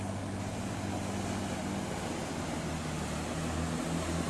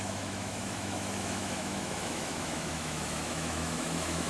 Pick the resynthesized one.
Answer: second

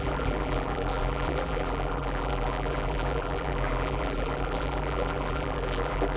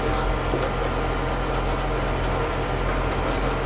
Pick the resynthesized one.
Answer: first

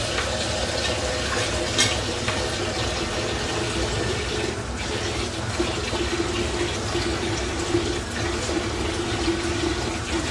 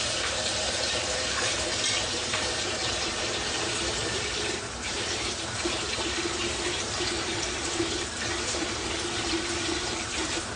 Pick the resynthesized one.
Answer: second